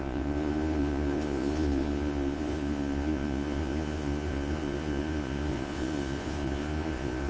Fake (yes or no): yes